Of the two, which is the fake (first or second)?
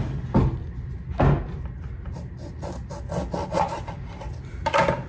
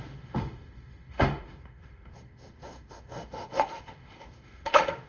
second